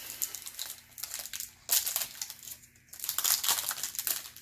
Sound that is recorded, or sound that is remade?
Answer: recorded